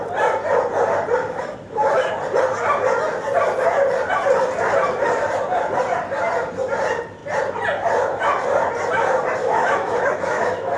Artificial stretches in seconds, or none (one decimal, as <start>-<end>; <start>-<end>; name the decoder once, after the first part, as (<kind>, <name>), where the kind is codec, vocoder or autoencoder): 1.2-2.1 (autoencoder, DAC-VAE); 9.4-10.8